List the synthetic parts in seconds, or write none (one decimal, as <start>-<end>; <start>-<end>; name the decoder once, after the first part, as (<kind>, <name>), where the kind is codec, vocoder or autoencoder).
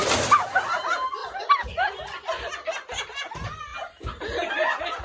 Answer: 1.2-3.3 (vocoder, BigVGAN v2)